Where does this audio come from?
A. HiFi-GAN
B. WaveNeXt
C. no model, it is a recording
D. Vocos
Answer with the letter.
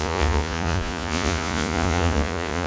D